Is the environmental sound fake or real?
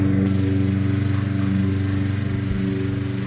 real